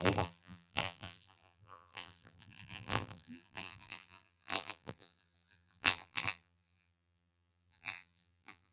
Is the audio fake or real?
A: fake